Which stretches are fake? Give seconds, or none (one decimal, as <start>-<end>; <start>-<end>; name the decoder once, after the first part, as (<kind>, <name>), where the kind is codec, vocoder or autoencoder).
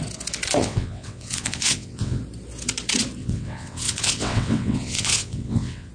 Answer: 0.6-2.2 (vocoder, WaveNeXt); 3.2-5.9